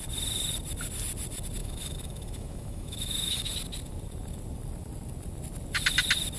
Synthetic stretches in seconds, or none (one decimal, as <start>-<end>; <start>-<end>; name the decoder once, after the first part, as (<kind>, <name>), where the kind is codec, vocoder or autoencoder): 1.6-3.5 (autoencoder, DAC-VAE)